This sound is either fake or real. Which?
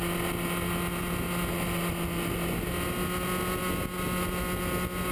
real